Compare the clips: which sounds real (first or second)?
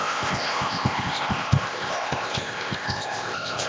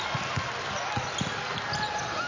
second